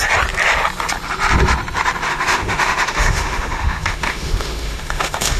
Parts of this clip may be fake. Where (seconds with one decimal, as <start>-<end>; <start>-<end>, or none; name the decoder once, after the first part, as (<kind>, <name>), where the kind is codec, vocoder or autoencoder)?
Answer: 2.1-5.4 (autoencoder, DAC-VAE)